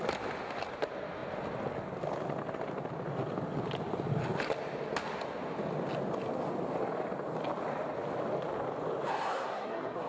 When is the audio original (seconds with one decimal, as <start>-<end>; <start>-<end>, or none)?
0.0-9.1